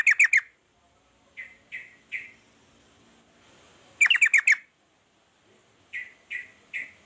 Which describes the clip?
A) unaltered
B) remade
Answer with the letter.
A